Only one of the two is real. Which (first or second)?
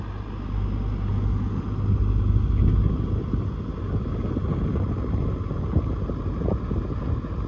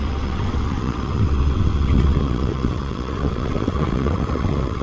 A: first